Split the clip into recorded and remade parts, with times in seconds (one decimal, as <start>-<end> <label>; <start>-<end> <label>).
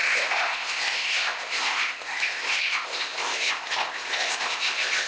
0.0-5.1 remade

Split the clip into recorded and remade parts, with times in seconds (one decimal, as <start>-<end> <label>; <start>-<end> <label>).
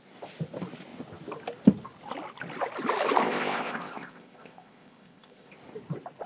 0.0-3.2 recorded; 3.2-5.5 remade; 5.5-6.3 recorded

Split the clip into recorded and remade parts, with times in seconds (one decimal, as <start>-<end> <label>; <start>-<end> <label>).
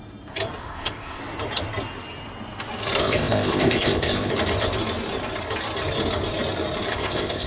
0.0-0.6 recorded; 0.6-1.2 remade; 1.2-3.0 recorded; 3.0-4.3 remade; 4.3-6.9 recorded; 6.9-7.5 remade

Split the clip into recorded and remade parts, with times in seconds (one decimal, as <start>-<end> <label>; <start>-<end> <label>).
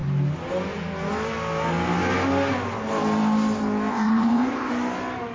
0.0-3.9 recorded; 3.9-4.7 remade; 4.7-5.3 recorded